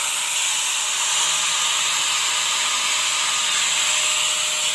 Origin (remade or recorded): recorded